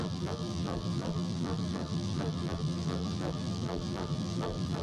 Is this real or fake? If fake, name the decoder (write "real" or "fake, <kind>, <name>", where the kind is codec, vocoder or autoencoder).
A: fake, vocoder, BigVGAN v2